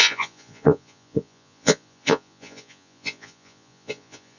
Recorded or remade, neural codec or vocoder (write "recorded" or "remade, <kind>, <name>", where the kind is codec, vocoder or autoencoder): remade, vocoder, Vocos